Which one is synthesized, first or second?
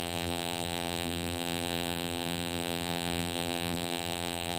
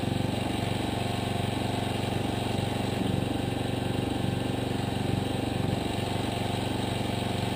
first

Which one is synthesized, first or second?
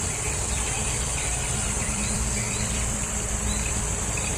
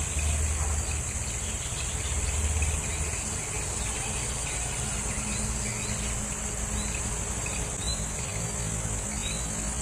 first